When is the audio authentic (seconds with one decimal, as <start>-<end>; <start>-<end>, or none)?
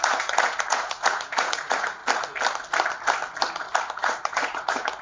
2.0-4.0